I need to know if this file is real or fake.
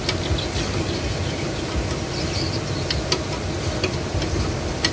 real